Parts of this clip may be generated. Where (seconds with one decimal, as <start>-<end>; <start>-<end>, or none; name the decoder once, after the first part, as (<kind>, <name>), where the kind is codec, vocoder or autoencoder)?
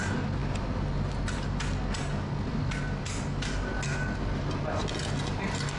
none